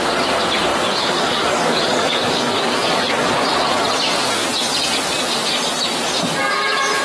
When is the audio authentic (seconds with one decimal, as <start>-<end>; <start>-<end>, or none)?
0.0-0.7; 3.3-7.0